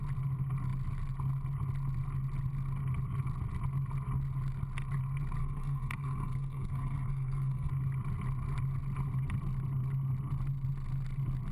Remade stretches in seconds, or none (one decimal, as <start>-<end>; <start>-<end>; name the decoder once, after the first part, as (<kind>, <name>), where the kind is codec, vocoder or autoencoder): 5.4-7.7 (codec, SNAC)